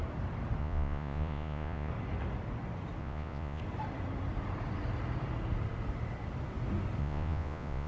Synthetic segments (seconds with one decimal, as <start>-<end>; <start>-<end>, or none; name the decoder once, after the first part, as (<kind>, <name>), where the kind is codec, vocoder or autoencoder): 0.6-1.9 (vocoder, Vocos); 3.0-3.6; 7.0-7.9